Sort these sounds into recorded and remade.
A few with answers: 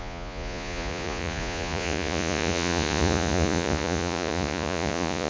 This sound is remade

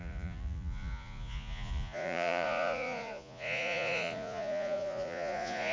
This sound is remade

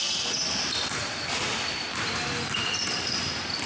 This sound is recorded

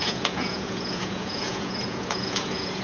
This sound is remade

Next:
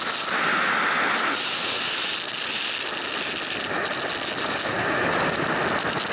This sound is recorded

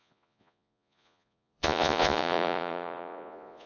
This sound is remade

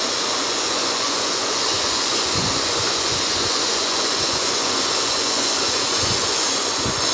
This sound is remade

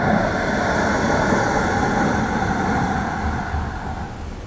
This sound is recorded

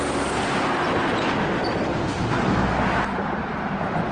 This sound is recorded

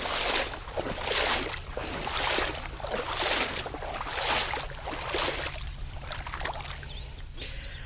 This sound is recorded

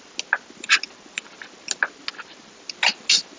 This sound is recorded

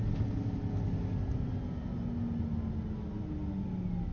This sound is recorded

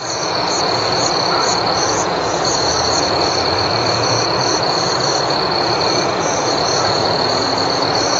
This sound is remade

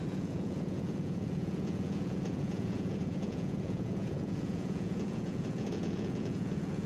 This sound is remade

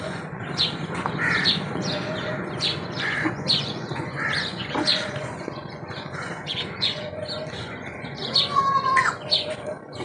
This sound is remade